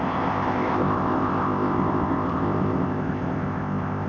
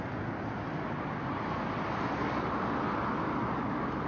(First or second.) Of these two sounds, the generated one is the first